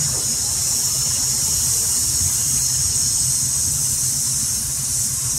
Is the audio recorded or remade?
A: recorded